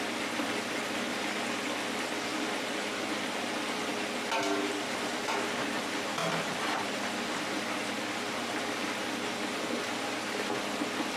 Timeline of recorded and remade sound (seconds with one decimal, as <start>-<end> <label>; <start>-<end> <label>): 0.0-2.3 recorded; 2.3-3.9 remade; 3.9-6.2 recorded; 6.2-7.1 remade; 7.1-11.2 recorded